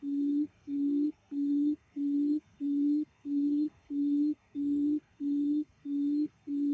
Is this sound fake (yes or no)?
yes